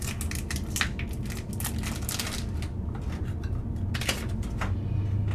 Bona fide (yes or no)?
yes